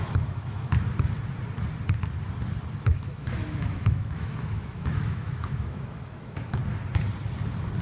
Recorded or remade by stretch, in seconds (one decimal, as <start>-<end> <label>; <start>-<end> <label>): 0.0-0.7 remade; 0.7-2.8 recorded; 2.8-6.6 remade; 6.6-7.8 recorded